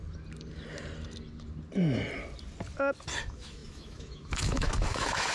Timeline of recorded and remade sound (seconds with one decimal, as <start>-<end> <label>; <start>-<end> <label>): 0.0-3.2 recorded; 3.2-5.3 remade